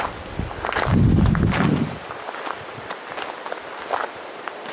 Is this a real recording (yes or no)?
yes